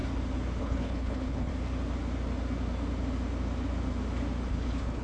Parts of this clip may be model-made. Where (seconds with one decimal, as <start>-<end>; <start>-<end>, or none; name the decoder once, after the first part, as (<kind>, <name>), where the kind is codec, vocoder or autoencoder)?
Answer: 0.6-1.5 (codec, HILCodec); 4.5-5.0